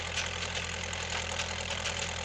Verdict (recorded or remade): recorded